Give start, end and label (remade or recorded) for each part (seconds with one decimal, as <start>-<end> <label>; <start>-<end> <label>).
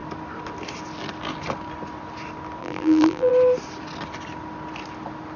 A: 0.0-2.6 recorded; 2.6-3.3 remade; 3.3-5.4 recorded